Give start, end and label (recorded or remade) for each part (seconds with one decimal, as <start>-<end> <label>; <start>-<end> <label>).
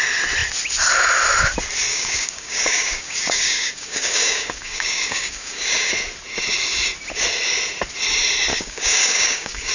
0.0-1.9 recorded; 1.9-5.9 remade; 5.9-8.5 recorded; 8.5-9.7 remade